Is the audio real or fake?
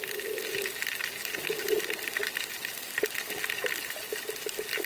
real